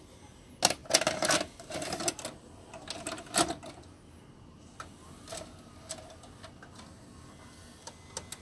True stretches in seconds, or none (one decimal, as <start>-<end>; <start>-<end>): 0.0-8.4